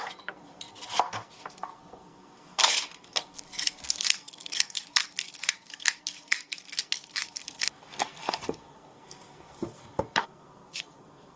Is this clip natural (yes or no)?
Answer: no